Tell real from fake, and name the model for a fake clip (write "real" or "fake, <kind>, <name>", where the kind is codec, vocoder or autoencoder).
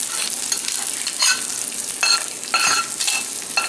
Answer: real